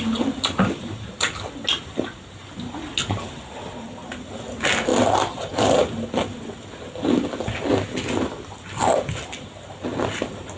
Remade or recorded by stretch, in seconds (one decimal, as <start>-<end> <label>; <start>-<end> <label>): 0.0-10.6 recorded